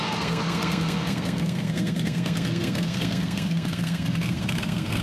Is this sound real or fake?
fake